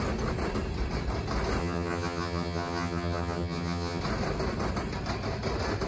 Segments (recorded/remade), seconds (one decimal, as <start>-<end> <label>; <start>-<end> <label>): 0.0-1.6 recorded; 1.6-4.0 remade; 4.0-5.9 recorded

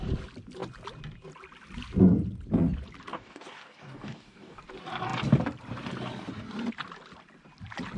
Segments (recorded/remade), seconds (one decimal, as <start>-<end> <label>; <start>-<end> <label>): 0.0-3.1 recorded; 3.1-4.6 remade; 4.6-8.0 recorded

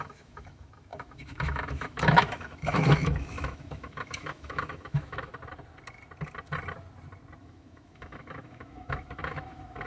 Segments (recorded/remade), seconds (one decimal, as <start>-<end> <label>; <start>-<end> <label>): 0.0-5.3 remade; 5.3-7.4 recorded; 7.4-9.9 remade

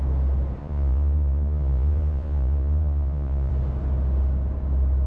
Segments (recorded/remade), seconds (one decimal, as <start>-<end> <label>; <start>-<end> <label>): 0.0-0.6 recorded; 0.6-3.5 remade; 3.5-5.1 recorded

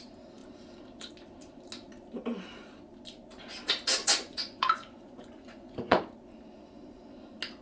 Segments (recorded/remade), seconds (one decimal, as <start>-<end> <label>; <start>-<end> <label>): 0.0-4.0 recorded; 4.0-6.0 remade; 6.0-7.6 recorded